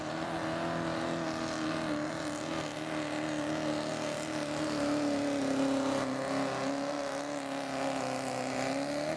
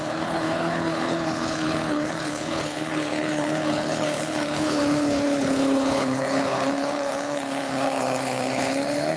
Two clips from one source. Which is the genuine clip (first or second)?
first